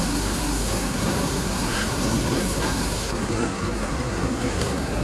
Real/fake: fake